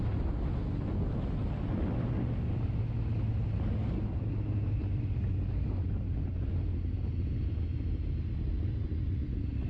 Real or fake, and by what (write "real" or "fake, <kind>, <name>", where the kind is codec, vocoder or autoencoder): real